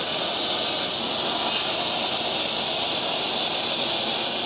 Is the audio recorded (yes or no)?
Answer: yes